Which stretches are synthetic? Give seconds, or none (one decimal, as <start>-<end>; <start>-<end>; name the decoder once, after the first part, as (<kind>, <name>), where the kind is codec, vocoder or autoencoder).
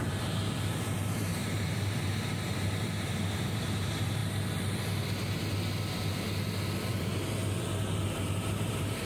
0.0-4.2 (vocoder, BigVGAN v2); 7.0-7.4; 7.9-9.1